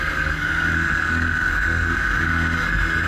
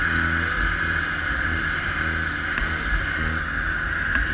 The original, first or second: second